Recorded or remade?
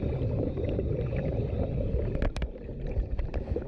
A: recorded